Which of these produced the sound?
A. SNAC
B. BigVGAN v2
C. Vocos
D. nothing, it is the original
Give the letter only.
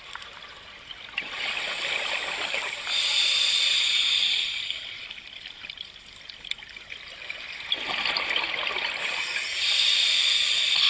D